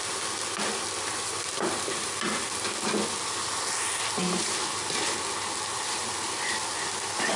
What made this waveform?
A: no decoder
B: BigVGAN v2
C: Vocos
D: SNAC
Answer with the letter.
A